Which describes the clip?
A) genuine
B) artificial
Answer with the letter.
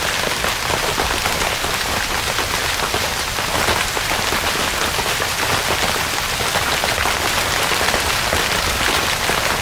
A